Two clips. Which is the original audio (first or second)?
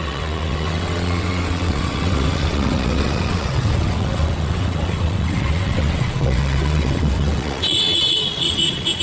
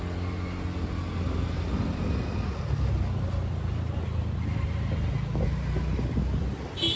second